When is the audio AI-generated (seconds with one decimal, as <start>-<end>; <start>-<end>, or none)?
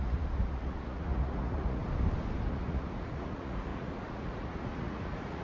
0.0-1.8; 2.5-5.4